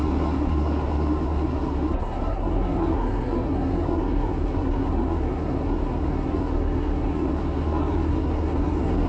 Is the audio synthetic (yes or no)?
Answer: yes